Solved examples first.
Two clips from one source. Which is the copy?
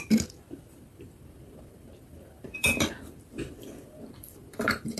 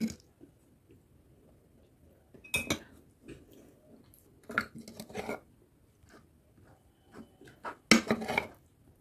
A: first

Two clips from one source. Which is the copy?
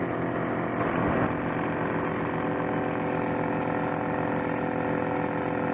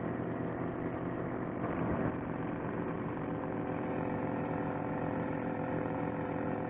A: second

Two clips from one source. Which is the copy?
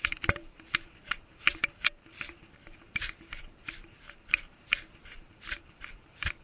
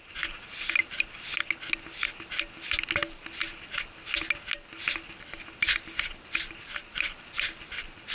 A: first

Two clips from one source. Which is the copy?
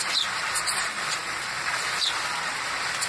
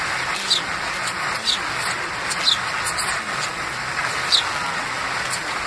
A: first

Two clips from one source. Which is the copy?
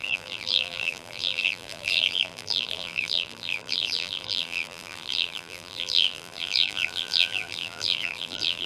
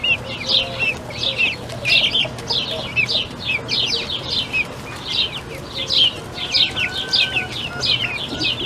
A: first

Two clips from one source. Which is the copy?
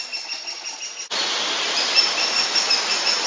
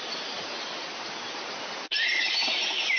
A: second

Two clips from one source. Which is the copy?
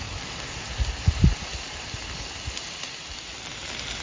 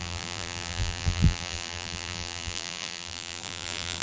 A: second